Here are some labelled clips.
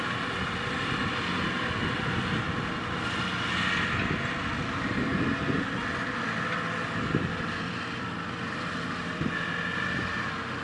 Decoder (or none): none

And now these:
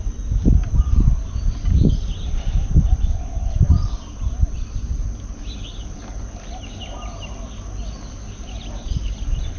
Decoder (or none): none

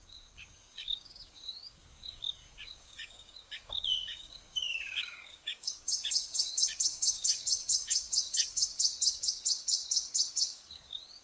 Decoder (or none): codec, DAC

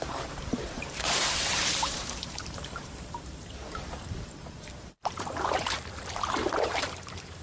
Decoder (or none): vocoder, BigVGAN v2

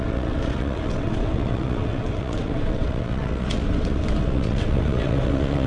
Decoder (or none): vocoder, WaveNeXt